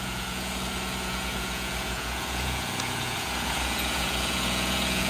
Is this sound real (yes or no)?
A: no